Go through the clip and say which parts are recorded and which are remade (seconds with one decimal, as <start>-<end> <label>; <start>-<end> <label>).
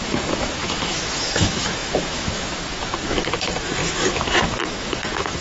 0.0-5.4 remade